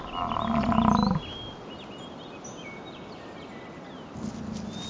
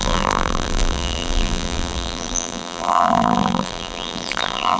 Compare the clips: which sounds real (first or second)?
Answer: first